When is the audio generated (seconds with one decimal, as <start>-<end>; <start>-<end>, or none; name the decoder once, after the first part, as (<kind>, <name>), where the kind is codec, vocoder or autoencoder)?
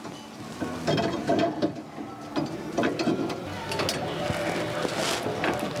none